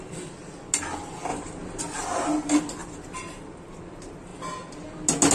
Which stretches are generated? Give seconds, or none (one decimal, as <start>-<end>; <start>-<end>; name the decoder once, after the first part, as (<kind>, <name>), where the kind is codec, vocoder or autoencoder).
1.3-1.8 (vocoder, BigVGAN v2)